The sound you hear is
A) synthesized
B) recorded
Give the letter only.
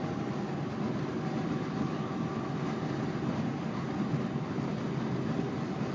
B